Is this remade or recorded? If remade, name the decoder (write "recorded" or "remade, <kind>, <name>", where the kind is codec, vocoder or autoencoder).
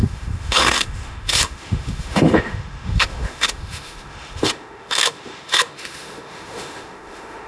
remade, autoencoder, DAC-VAE